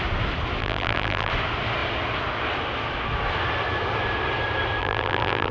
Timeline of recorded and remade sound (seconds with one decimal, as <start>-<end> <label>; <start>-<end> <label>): 0.0-0.6 recorded; 0.6-1.3 remade; 1.3-4.8 recorded; 4.8-5.5 remade